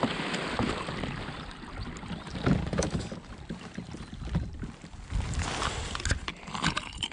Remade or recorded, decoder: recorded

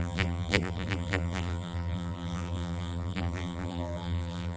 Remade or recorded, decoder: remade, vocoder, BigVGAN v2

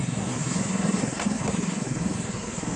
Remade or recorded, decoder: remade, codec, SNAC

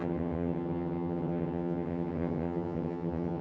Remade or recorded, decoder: remade, vocoder, HiFi-GAN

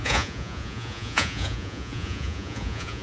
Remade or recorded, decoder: remade, vocoder, Vocos